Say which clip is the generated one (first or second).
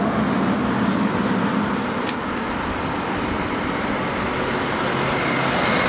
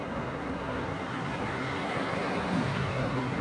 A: second